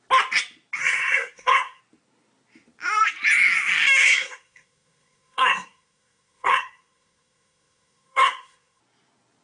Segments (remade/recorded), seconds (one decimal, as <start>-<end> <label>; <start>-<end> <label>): 0.0-0.8 recorded; 0.8-1.8 remade; 1.8-4.0 recorded; 4.0-8.8 remade; 8.8-9.4 recorded